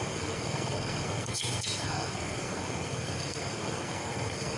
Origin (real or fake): fake